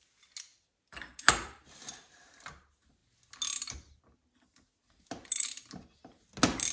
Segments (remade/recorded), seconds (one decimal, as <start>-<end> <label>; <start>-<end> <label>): 0.0-6.7 recorded